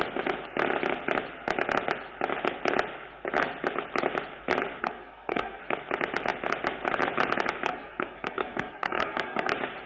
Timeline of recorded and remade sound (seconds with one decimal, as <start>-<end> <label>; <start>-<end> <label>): 0.0-4.8 recorded; 4.8-5.6 remade; 5.6-7.7 recorded; 7.7-9.5 remade; 9.5-9.9 recorded